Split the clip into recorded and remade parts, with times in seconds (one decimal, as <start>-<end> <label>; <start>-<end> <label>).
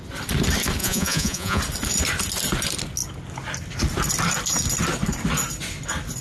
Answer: 0.0-0.8 recorded; 0.8-1.6 remade; 1.6-6.2 recorded